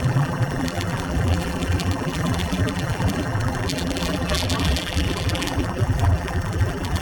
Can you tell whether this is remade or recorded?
remade